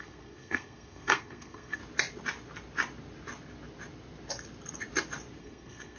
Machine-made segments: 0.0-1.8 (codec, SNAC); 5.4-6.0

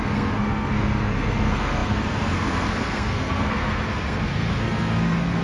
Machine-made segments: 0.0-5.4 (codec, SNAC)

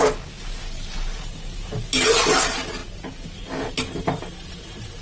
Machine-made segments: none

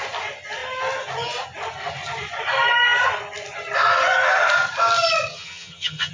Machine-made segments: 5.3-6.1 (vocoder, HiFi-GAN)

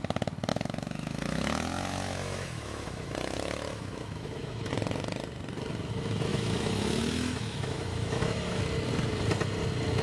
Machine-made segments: 0.5-4.7 (autoencoder, DAC-VAE); 6.3-8.6

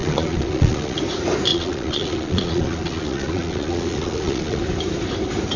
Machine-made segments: 0.0-1.0 (vocoder, Vocos); 1.5-4.6

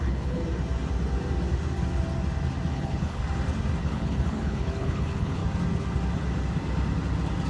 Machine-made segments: 0.0-0.4 (codec, HILCodec); 2.7-3.2; 3.8-5.4